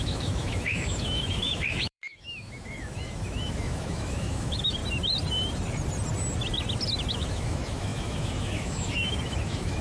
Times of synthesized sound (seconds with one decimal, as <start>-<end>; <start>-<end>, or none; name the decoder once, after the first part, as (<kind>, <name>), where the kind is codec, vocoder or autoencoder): 0.0-4.8 (autoencoder, DAC-VAE); 7.1-9.8